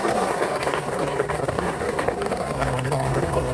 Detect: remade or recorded remade